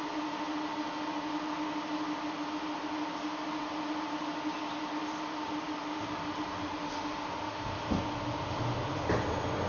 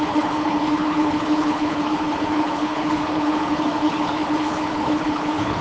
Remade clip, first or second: second